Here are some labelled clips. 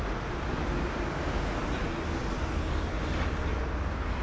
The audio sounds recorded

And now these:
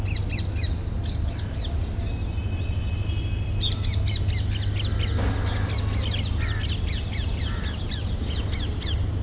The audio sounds recorded